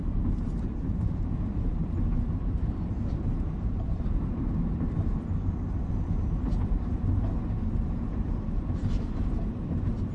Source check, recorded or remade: remade